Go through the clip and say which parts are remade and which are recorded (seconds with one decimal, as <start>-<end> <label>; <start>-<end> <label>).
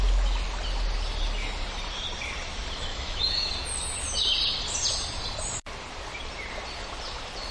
0.0-2.9 recorded; 2.9-3.5 remade; 3.5-7.5 recorded